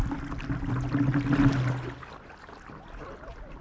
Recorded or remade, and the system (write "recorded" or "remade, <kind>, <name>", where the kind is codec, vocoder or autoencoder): recorded